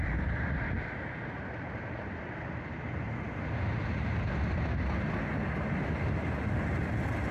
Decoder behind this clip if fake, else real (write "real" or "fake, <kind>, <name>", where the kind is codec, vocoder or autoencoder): real